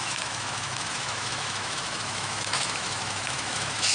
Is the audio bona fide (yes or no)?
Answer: no